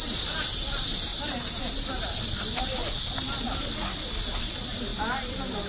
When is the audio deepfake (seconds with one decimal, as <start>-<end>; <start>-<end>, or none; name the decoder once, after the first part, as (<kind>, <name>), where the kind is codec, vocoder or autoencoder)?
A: none